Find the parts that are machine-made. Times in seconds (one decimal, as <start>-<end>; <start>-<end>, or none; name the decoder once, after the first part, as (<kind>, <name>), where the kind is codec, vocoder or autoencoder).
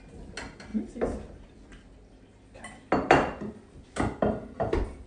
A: none